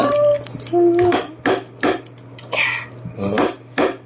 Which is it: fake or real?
real